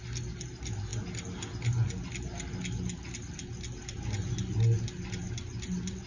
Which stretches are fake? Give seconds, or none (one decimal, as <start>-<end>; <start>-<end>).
none